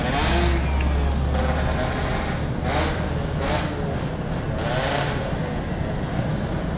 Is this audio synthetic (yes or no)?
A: no